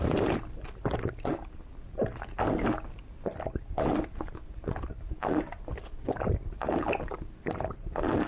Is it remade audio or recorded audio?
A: recorded